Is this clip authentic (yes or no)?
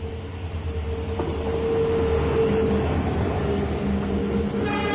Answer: yes